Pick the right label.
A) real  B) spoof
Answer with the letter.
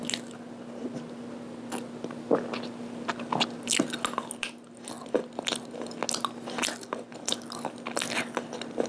A